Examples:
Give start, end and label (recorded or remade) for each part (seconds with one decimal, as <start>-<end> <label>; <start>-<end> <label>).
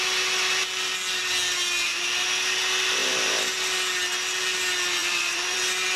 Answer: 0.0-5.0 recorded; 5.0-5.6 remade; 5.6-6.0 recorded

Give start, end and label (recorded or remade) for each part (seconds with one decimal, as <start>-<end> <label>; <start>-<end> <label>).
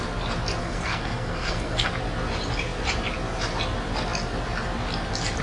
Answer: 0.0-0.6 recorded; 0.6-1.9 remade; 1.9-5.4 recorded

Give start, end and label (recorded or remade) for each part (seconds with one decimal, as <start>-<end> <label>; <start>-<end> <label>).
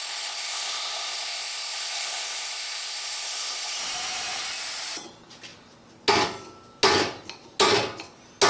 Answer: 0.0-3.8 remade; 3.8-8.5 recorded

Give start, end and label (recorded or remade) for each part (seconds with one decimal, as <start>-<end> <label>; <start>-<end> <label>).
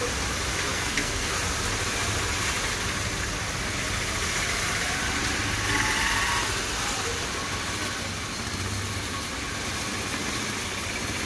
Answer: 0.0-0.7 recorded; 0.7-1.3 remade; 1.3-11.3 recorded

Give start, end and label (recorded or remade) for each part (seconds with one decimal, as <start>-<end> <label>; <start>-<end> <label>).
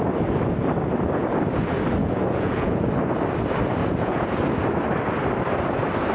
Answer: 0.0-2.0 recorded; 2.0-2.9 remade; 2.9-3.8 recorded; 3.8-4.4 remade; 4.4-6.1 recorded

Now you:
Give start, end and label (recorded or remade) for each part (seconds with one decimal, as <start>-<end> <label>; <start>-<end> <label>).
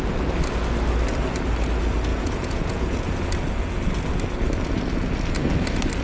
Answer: 0.0-2.1 recorded; 2.1-3.2 remade; 3.2-6.0 recorded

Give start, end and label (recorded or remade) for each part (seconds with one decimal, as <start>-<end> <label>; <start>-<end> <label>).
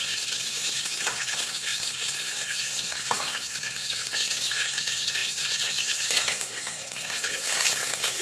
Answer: 0.0-8.2 remade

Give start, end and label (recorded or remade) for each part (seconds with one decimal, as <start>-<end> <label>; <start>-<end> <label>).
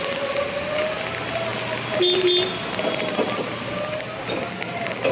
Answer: 0.0-5.1 recorded